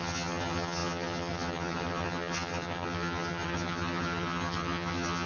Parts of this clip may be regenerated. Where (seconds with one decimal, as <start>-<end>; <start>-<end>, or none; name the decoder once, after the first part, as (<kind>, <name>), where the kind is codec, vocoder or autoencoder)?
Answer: 0.0-5.3 (vocoder, HiFi-GAN)